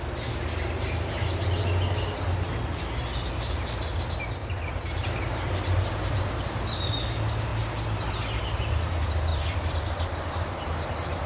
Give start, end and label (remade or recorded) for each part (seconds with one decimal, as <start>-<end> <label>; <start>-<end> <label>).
0.0-4.4 recorded; 4.4-6.9 remade; 6.9-9.3 recorded; 9.3-11.3 remade